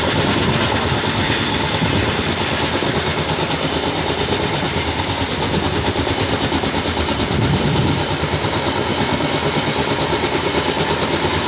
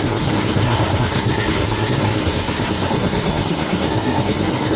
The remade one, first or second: second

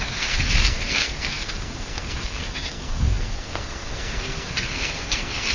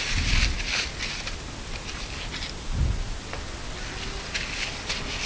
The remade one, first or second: first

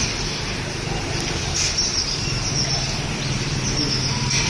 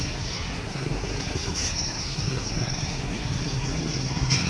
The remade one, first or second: second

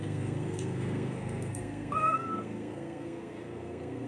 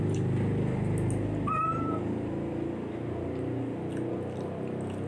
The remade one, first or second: first